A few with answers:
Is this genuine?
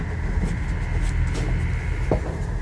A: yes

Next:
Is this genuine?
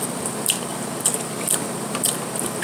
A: no